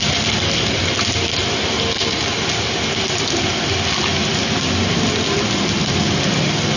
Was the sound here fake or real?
real